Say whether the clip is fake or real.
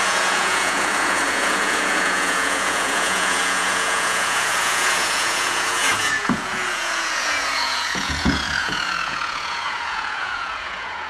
fake